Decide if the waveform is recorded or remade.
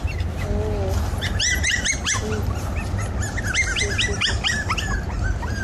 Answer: recorded